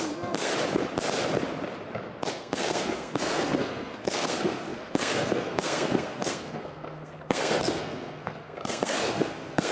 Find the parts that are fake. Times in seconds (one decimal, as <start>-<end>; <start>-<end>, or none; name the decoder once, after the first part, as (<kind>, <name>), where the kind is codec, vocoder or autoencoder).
0.0-0.5 (codec, SNAC); 2.3-9.7

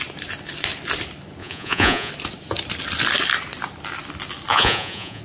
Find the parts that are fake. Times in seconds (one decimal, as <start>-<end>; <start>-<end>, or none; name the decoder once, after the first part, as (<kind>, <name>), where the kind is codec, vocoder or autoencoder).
1.4-2.1 (vocoder, Vocos); 4.5-5.2